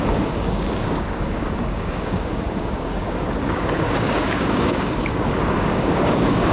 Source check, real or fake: fake